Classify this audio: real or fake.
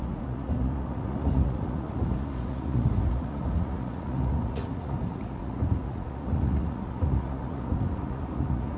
fake